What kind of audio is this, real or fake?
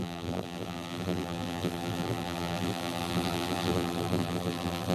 fake